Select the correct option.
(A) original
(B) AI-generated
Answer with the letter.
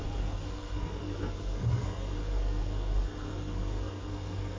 B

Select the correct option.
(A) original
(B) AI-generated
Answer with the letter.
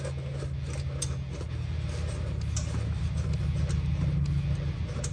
A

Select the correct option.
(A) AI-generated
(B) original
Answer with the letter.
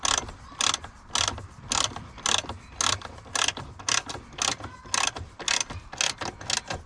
B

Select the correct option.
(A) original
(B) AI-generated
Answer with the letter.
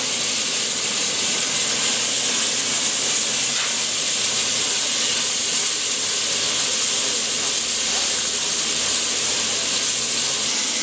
A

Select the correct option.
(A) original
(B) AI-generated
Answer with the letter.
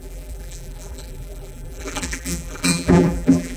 B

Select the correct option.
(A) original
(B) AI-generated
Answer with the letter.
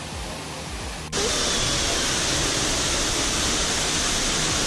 A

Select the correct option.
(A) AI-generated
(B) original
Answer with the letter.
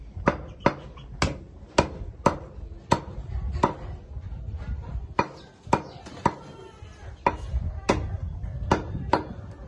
B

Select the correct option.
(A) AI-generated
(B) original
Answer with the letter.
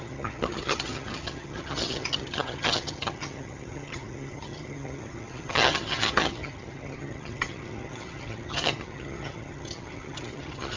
A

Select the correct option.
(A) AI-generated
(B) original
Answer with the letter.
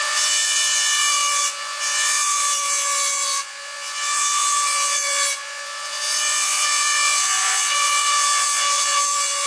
A